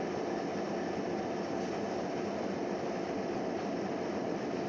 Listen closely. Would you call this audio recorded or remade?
recorded